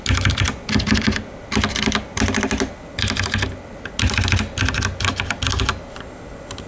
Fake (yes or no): no